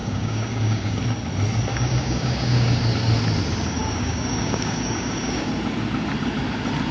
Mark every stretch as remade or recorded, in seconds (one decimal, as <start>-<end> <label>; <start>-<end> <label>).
0.0-1.0 remade; 1.0-1.7 recorded; 1.7-2.8 remade; 2.8-3.8 recorded; 3.8-5.5 remade; 5.5-6.9 recorded